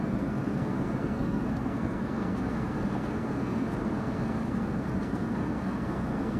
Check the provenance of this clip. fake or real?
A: fake